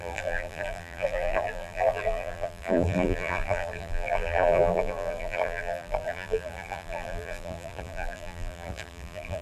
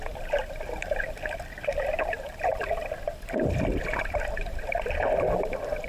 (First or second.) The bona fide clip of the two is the second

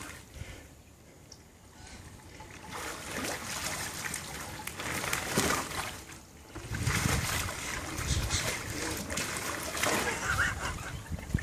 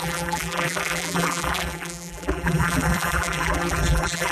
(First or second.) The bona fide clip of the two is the first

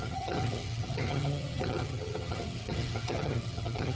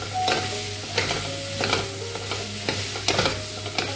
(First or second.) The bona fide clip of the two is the second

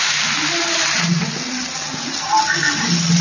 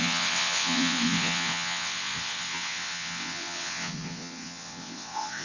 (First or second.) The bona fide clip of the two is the first